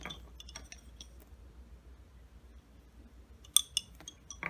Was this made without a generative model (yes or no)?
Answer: yes